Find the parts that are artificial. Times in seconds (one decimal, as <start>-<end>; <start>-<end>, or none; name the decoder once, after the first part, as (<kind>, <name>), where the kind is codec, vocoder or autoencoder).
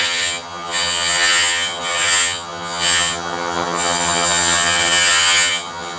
0.0-6.0 (vocoder, HiFi-GAN)